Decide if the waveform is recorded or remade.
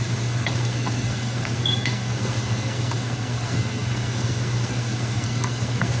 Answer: remade